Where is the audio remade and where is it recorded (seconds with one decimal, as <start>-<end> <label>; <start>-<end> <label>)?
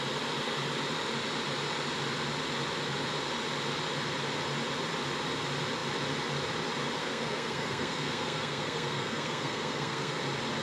0.0-7.0 recorded; 7.0-10.2 remade; 10.2-10.6 recorded